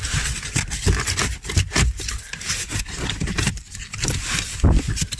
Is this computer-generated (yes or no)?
no